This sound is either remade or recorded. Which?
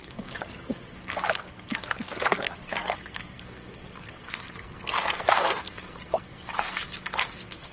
remade